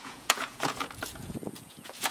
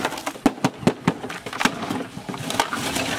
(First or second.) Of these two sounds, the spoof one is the first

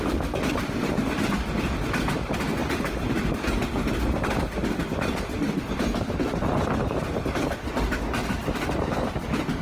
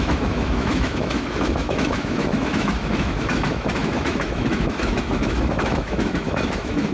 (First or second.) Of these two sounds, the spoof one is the second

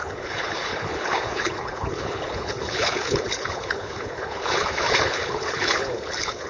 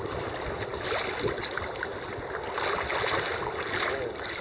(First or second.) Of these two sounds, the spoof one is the first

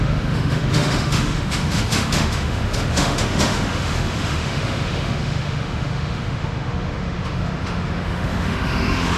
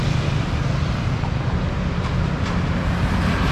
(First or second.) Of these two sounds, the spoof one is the first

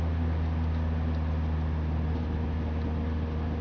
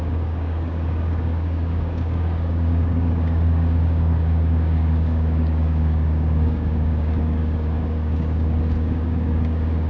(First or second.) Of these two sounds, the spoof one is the second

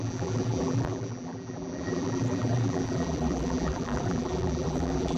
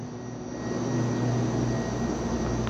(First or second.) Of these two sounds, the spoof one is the first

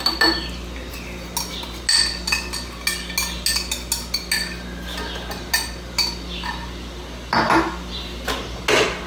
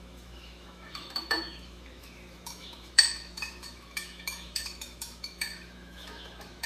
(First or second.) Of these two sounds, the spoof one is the second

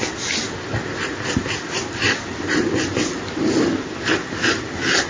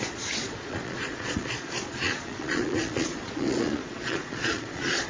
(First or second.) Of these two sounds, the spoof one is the second